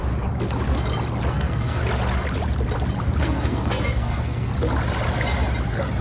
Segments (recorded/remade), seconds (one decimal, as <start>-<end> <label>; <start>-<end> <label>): 0.0-1.3 recorded; 1.3-1.8 remade; 1.8-3.2 recorded; 3.2-4.5 remade; 4.5-6.0 recorded